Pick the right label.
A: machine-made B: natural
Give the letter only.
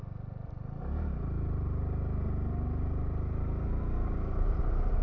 B